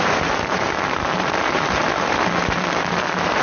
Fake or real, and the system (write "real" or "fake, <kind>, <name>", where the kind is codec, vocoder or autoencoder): fake, vocoder, BigVGAN v2